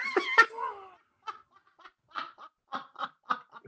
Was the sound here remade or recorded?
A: recorded